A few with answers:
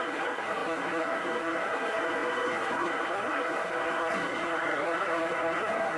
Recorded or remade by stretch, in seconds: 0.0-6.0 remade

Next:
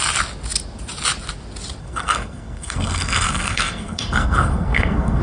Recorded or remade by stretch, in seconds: 0.0-1.8 recorded; 1.8-5.2 remade

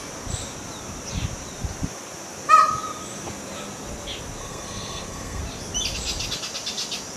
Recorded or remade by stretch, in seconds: 0.0-4.4 recorded; 4.4-5.4 remade; 5.4-7.2 recorded